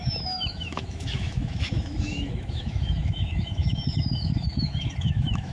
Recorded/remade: remade